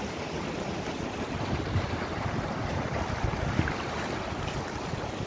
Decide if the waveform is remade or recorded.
recorded